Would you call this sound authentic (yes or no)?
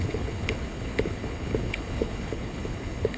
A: no